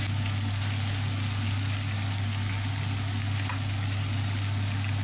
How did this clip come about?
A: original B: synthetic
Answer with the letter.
A